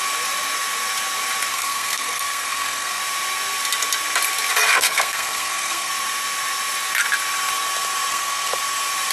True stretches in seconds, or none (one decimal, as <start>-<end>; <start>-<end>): 0.0-1.5; 3.0-4.7; 5.9-8.1; 8.6-9.1